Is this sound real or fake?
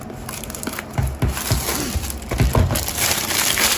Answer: real